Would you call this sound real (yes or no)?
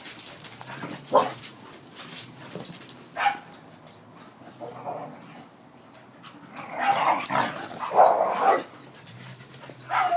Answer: yes